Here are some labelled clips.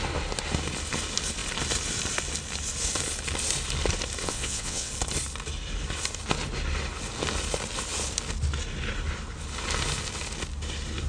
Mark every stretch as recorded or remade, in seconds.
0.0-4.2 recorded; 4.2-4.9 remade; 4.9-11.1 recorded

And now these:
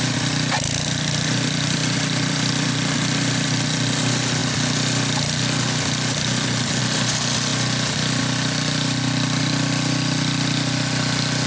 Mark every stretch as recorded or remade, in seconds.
0.0-11.5 recorded

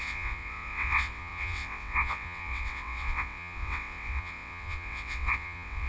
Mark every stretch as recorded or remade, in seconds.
0.0-5.9 remade

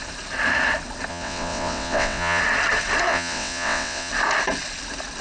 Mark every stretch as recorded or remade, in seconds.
0.0-1.1 recorded; 1.1-2.4 remade; 2.4-3.1 recorded; 3.1-4.1 remade; 4.1-5.2 recorded

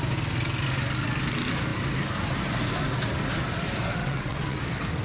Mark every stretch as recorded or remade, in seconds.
0.0-4.0 recorded; 4.0-4.6 remade; 4.6-5.0 recorded

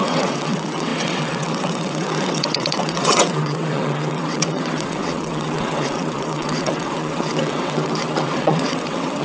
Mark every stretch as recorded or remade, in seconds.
0.0-9.2 remade

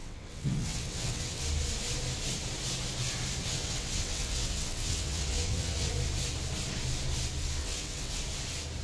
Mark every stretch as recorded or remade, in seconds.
0.0-1.4 remade; 1.4-3.4 recorded; 3.4-5.9 remade; 5.9-7.6 recorded; 7.6-8.2 remade; 8.2-8.8 recorded